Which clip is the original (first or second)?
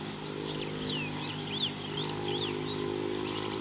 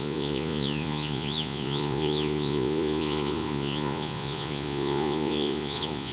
first